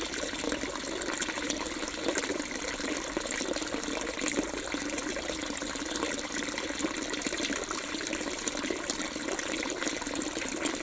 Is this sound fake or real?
fake